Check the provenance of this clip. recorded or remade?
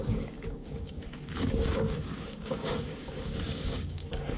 remade